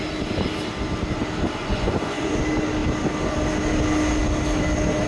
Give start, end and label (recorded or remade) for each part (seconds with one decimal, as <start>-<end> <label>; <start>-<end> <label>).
0.0-1.6 recorded; 1.6-2.4 remade; 2.4-5.1 recorded